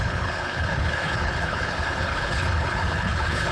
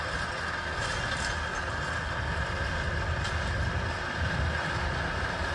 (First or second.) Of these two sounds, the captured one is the second